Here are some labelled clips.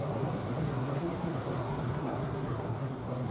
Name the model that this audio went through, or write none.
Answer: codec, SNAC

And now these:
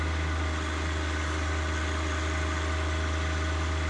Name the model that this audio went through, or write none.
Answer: none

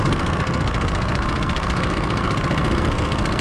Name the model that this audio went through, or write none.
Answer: codec, SNAC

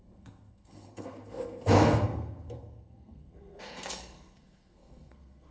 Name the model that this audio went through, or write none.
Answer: codec, SNAC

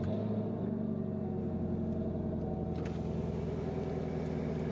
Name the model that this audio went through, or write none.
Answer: none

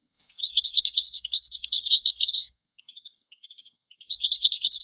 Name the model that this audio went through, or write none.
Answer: codec, SNAC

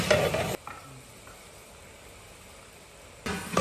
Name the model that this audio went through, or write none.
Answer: none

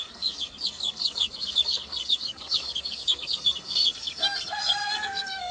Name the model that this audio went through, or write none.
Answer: codec, SNAC